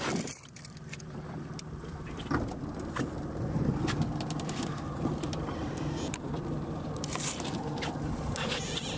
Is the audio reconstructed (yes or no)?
yes